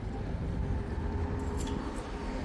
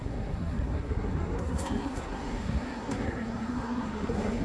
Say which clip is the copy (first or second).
second